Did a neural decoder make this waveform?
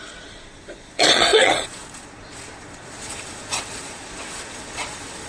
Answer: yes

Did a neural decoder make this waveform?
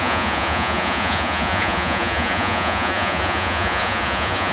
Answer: yes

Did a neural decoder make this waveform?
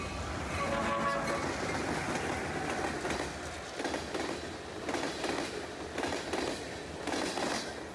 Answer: no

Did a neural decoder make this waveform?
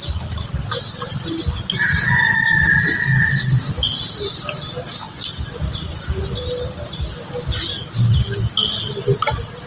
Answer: no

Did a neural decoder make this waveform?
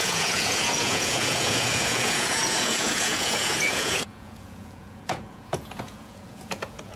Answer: yes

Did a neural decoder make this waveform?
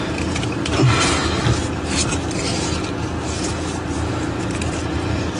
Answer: no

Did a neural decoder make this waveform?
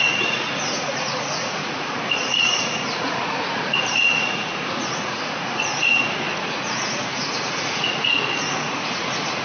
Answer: yes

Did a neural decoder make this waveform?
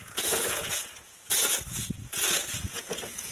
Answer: yes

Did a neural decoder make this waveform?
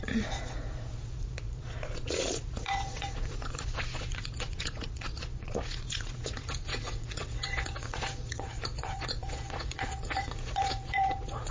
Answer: yes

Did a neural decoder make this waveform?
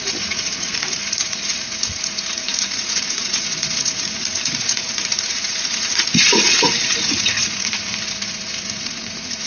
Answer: yes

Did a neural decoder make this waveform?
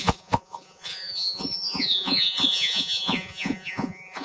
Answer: yes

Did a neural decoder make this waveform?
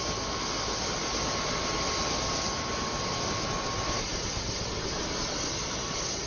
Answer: no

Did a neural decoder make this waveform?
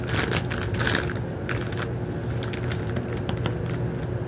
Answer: no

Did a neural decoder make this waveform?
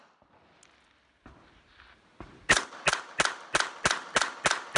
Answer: no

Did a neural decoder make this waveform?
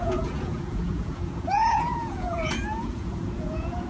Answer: yes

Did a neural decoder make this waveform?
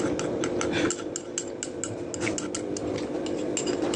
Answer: no